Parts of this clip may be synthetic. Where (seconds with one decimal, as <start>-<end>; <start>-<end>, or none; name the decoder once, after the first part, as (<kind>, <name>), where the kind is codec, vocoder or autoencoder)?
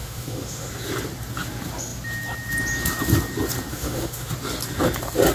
0.0-0.7 (autoencoder, DAC-VAE); 3.7-4.3